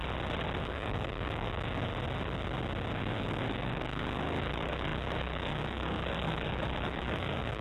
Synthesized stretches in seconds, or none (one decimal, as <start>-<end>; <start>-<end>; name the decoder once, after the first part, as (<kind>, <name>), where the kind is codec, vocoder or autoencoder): 0.6-1.9 (codec, DAC); 2.9-7.6